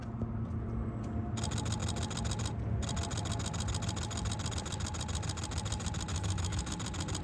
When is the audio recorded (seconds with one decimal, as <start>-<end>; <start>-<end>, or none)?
0.0-6.1; 6.7-7.2

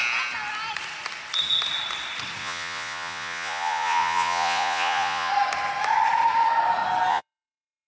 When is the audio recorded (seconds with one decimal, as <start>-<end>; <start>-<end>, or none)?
0.0-2.4; 5.3-7.1

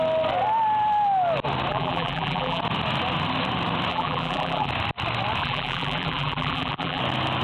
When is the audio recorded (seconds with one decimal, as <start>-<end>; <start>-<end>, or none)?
0.0-1.7; 2.6-3.9; 4.7-5.4; 7.0-7.4

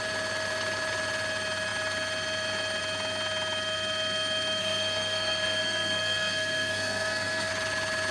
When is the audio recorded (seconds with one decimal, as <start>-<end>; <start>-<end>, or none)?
0.0-4.6; 7.5-8.1

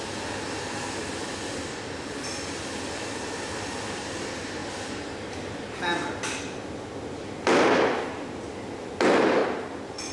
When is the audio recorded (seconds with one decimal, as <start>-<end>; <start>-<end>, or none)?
0.0-10.1